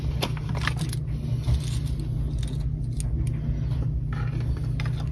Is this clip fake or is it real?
real